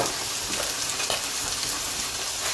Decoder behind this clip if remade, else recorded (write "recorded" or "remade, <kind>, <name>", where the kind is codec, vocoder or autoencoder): recorded